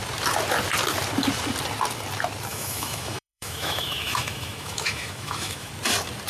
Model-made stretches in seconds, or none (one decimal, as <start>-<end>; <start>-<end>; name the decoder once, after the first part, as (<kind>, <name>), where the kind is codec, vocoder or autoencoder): 2.5-5.7 (autoencoder, DAC-VAE)